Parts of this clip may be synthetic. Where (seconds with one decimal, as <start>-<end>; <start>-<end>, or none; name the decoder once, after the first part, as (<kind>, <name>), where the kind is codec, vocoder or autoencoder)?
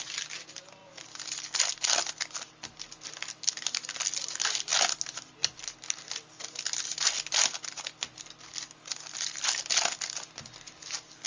none